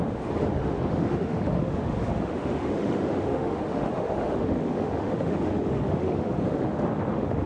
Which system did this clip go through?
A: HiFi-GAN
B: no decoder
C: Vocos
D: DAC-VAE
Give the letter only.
D